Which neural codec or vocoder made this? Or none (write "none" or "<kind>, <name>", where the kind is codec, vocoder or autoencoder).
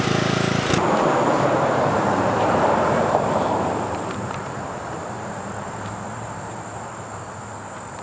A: vocoder, BigVGAN v2